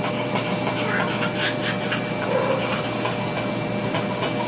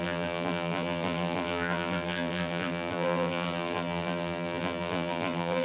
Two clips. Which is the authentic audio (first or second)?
first